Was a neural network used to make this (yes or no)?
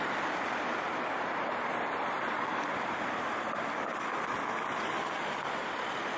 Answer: no